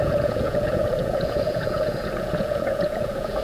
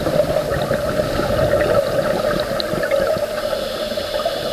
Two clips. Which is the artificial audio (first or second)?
first